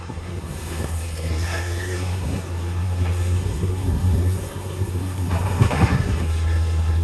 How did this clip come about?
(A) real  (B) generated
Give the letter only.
B